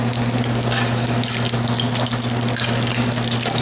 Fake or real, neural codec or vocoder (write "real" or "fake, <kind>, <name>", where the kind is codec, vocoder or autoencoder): real